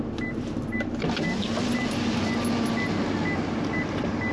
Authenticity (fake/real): real